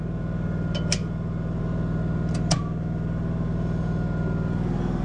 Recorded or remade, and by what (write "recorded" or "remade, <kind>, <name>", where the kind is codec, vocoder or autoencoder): recorded